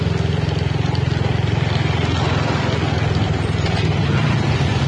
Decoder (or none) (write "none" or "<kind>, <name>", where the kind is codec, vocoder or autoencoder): none